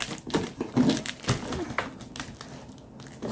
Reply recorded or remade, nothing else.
recorded